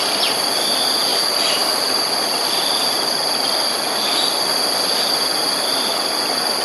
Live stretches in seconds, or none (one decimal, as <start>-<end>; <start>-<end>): 0.0-1.1; 5.1-6.6